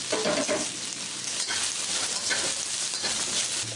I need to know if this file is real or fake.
real